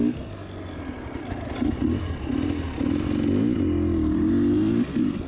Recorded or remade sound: recorded